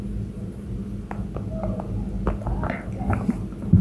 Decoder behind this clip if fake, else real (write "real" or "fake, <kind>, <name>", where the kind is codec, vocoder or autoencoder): real